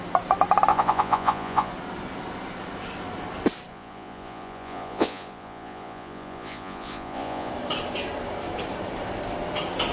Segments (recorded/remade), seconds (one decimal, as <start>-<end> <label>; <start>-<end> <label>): 0.0-0.7 recorded; 0.7-1.7 remade; 1.7-3.7 recorded; 3.7-7.5 remade; 7.5-9.9 recorded